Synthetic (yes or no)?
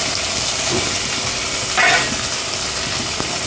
no